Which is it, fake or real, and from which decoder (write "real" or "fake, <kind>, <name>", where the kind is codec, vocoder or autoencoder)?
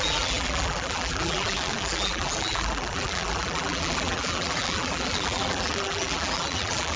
fake, vocoder, BigVGAN v2